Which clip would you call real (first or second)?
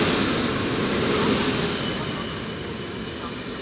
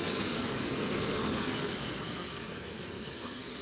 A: first